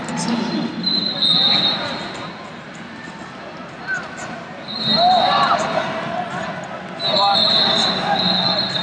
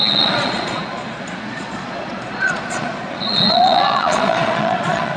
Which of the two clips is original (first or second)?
first